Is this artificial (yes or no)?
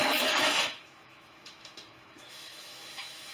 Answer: yes